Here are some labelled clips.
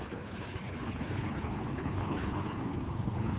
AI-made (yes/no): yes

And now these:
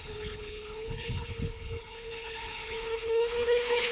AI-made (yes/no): yes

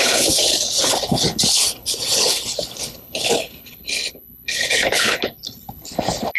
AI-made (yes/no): yes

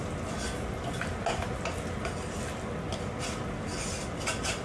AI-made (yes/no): no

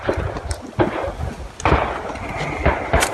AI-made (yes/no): no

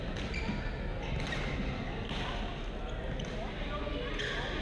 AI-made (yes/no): no